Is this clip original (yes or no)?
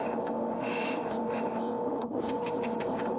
no